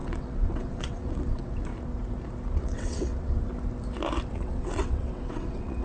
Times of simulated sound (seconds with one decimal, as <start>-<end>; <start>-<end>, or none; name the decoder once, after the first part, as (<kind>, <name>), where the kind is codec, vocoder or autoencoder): 0.0-1.7 (vocoder, WaveNeXt); 2.6-3.5; 4.3-5.8